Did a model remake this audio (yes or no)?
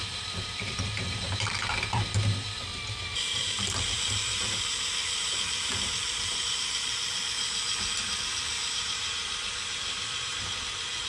yes